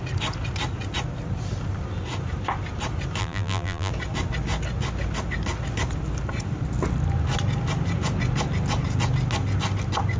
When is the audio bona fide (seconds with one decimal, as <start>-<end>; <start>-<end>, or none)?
0.0-3.2; 3.9-10.2